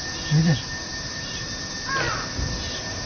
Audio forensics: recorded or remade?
recorded